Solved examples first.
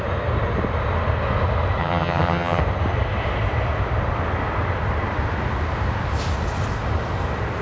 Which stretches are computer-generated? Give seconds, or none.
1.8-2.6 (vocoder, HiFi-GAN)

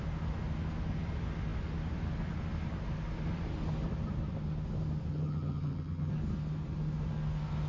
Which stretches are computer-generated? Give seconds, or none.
5.1-6.1 (vocoder, HiFi-GAN)

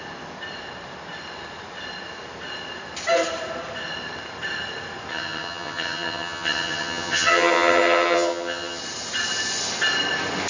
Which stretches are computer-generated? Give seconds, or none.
5.1-8.8 (vocoder, HiFi-GAN)

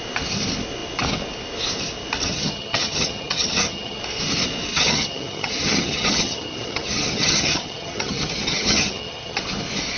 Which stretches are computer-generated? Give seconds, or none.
2.3-4.0 (vocoder, HiFi-GAN); 4.7-9.4

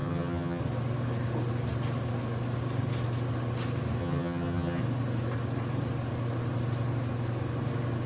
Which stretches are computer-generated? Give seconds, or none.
0.0-0.6 (vocoder, HiFi-GAN); 4.0-4.8

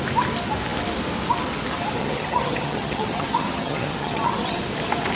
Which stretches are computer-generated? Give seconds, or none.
2.0-4.6 (vocoder, HiFi-GAN)

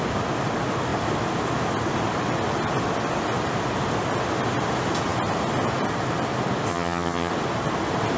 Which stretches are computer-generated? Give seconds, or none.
6.7-7.3 (vocoder, HiFi-GAN)